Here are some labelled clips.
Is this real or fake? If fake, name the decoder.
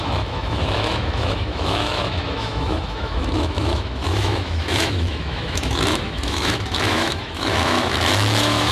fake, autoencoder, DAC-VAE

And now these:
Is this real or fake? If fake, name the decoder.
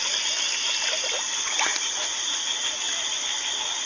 real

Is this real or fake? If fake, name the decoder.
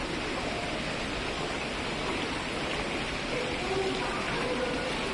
real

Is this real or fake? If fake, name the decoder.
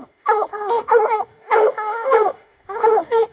fake, autoencoder, DAC-VAE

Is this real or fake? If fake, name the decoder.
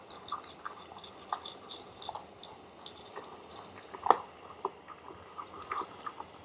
real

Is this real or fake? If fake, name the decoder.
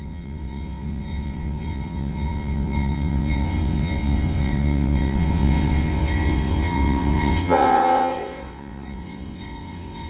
fake, vocoder, WaveNeXt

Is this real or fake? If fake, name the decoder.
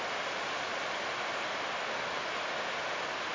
real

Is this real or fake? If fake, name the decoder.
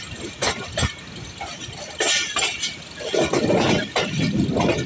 real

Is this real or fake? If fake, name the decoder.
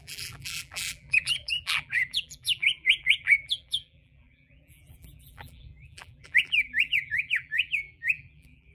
fake, vocoder, BigVGAN v2